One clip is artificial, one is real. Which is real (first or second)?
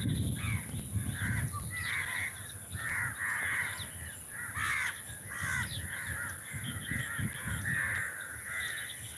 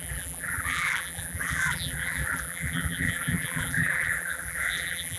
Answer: first